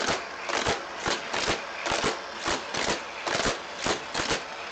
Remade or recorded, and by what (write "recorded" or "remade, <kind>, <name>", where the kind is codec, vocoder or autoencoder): recorded